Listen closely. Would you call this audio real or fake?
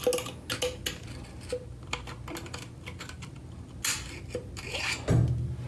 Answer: real